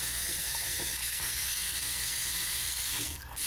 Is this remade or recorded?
remade